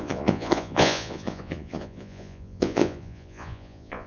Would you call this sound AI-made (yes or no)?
yes